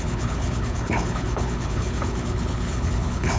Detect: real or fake fake